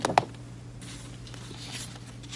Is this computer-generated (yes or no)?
no